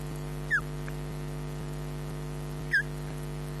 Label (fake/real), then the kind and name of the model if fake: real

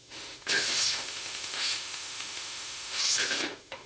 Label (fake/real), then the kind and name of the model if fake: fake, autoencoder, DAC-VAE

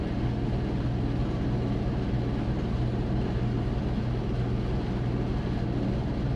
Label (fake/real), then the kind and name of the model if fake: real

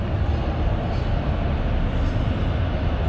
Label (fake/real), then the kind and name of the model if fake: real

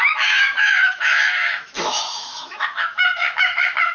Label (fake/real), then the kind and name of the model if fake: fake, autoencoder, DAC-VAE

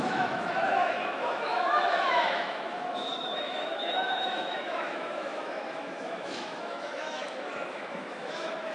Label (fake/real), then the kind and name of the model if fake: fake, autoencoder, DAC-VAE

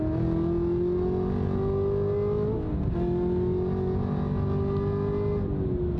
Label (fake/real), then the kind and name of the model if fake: real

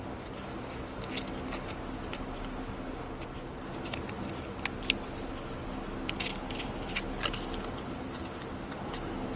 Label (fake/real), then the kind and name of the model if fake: real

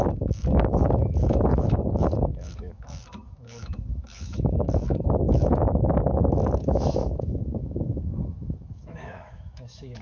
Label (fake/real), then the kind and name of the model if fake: fake, autoencoder, DAC-VAE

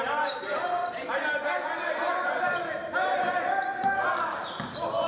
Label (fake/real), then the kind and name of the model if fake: real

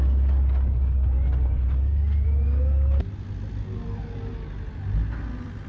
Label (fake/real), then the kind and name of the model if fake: real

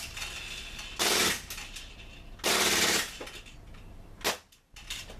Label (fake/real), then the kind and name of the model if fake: real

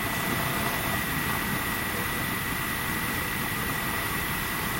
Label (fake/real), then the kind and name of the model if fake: real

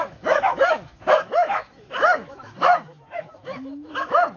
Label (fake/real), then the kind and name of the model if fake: fake, autoencoder, DAC-VAE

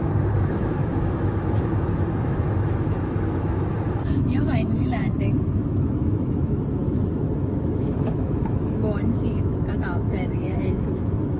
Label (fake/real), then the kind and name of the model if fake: fake, autoencoder, DAC-VAE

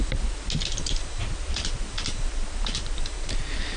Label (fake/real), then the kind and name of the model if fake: real